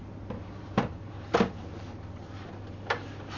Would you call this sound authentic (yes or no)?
no